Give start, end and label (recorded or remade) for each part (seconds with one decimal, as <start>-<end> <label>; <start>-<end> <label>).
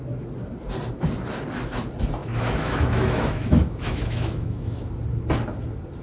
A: 0.0-2.2 recorded; 2.2-4.9 remade; 4.9-6.0 recorded